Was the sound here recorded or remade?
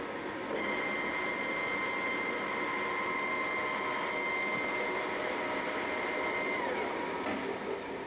recorded